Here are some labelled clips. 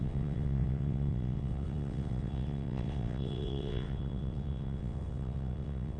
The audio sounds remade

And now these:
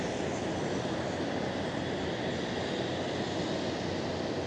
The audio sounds recorded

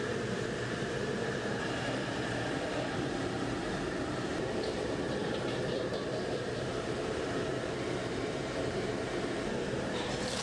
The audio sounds remade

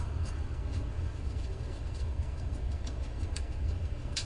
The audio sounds remade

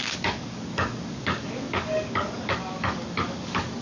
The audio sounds remade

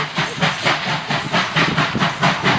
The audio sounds recorded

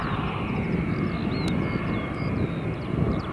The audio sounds recorded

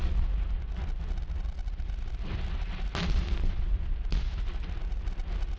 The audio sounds recorded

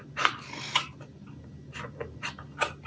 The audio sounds recorded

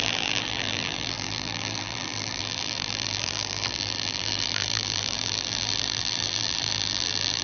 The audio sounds remade